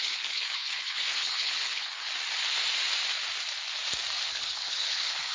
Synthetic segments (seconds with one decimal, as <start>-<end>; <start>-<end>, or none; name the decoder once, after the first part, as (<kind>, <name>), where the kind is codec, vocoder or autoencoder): 0.0-2.1 (codec, HILCodec); 4.3-5.3